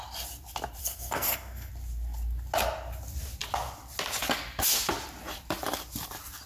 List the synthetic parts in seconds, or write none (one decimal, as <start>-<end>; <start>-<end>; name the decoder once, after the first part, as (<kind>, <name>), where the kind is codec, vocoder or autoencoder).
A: 0.8-1.7 (codec, SNAC)

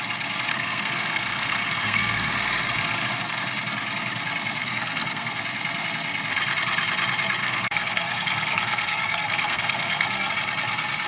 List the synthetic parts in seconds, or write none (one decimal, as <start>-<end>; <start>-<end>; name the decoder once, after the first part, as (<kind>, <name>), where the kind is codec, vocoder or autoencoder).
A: 0.5-2.3 (codec, SNAC); 4.6-5.4; 7.4-10.3